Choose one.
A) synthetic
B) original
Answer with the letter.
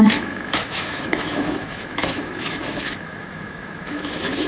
A